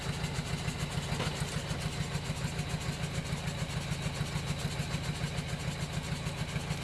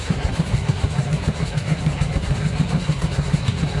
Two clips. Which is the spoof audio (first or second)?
second